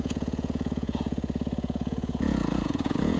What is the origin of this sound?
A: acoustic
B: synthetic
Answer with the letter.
B